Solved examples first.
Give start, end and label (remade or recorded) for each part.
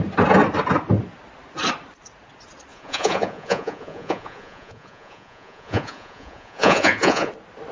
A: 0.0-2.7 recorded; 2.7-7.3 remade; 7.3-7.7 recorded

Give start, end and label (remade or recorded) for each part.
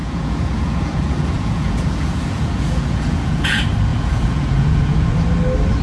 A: 0.0-3.5 remade; 3.5-3.9 recorded; 3.9-5.1 remade; 5.1-5.8 recorded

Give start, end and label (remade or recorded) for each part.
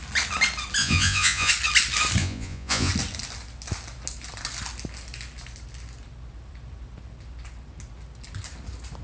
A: 0.0-0.8 recorded; 0.8-1.5 remade; 1.5-2.2 recorded; 2.2-2.9 remade; 2.9-9.0 recorded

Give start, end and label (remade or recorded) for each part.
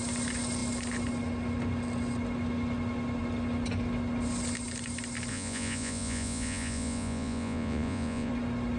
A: 0.0-5.3 recorded; 5.3-8.3 remade; 8.3-8.8 recorded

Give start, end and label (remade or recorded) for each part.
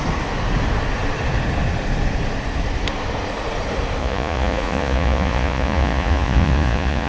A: 0.0-4.0 recorded; 4.0-7.1 remade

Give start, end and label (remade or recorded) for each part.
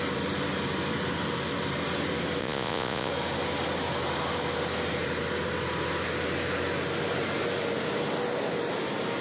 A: 0.0-2.4 recorded; 2.4-3.1 remade; 3.1-9.2 recorded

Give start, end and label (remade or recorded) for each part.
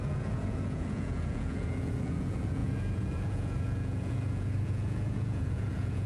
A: 0.0-6.1 remade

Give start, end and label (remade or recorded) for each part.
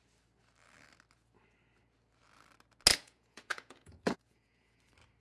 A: 0.0-2.9 recorded; 2.9-4.8 remade; 4.8-5.2 recorded